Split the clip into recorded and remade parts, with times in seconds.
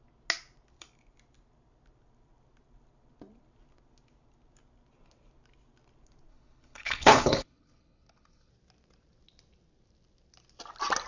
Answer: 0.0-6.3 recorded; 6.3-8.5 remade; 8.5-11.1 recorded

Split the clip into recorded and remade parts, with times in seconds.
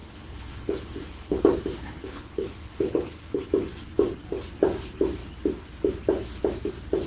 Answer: 0.0-1.4 remade; 1.4-2.0 recorded; 2.0-3.5 remade; 3.5-7.1 recorded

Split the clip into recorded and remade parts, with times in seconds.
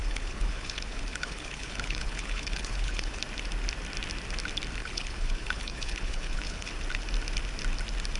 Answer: 0.0-3.2 remade; 3.2-4.8 recorded; 4.8-6.7 remade; 6.7-8.2 recorded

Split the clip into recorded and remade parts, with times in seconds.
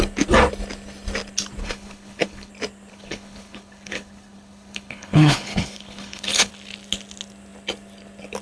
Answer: 0.0-1.6 recorded; 1.6-2.5 remade; 2.5-2.9 recorded; 2.9-6.5 remade; 6.5-8.4 recorded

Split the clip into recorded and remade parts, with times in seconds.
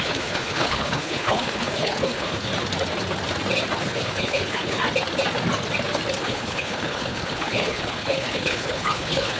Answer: 0.0-2.5 remade; 2.5-3.8 recorded; 3.8-4.8 remade; 4.8-6.2 recorded; 6.2-9.4 remade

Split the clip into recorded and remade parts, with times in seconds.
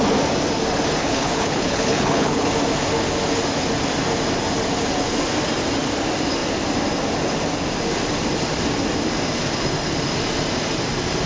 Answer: 0.0-1.0 recorded; 1.0-2.5 remade; 2.5-11.3 recorded